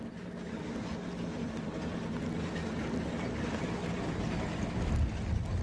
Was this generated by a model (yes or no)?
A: no